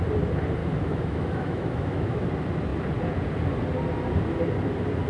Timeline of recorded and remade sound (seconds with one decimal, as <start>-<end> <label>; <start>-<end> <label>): 0.0-0.6 recorded; 0.6-2.2 remade; 2.2-5.1 recorded